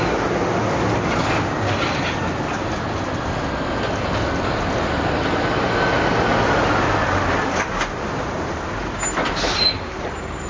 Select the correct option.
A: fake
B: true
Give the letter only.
B